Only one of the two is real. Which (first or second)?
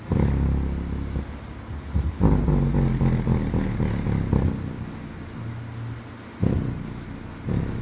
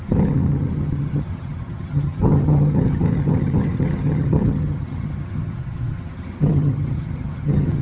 first